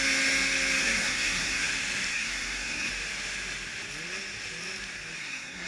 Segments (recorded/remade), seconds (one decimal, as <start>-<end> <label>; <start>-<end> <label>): 0.0-0.8 recorded; 0.8-1.7 remade; 1.7-2.1 recorded; 2.1-2.9 remade; 2.9-5.2 recorded; 5.2-5.7 remade